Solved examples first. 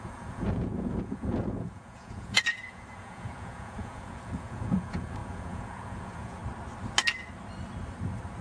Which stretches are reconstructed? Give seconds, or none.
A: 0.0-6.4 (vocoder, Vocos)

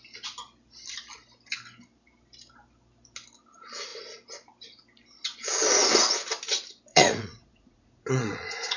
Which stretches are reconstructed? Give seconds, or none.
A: 6.9-8.8 (vocoder, Vocos)

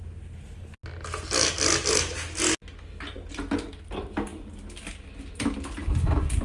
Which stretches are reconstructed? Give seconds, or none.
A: none

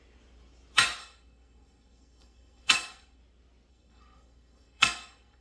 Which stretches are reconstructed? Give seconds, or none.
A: 1.0-3.2 (codec, SNAC); 3.7-5.4

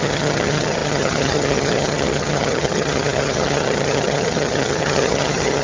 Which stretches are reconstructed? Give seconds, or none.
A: 0.0-5.6 (vocoder, HiFi-GAN)

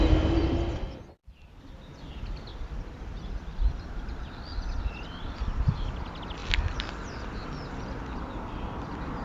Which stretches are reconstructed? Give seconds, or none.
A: 1.2-2.1 (vocoder, BigVGAN v2); 2.5-3.8